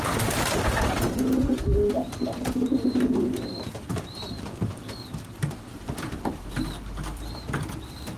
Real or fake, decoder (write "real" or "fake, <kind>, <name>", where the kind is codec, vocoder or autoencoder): fake, vocoder, BigVGAN v2